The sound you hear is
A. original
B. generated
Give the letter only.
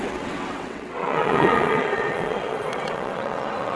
B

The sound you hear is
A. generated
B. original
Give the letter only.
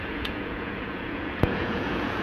A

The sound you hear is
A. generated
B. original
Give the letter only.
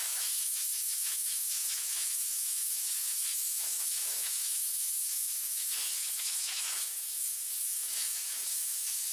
A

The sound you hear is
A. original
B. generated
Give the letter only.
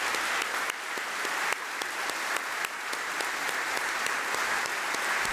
A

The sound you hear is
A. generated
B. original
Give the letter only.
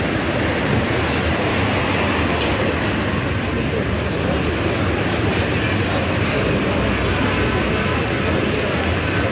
B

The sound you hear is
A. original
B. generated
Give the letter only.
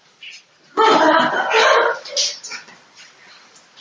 A